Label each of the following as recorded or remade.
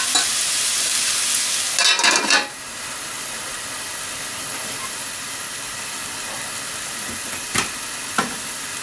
recorded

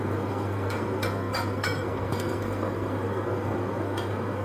remade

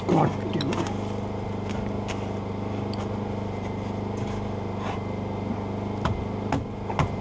recorded